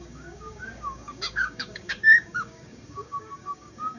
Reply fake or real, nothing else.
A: fake